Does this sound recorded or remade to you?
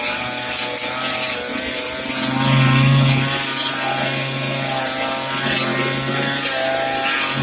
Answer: recorded